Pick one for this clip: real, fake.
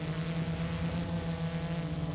real